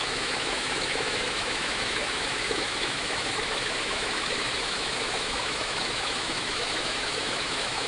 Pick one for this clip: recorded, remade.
remade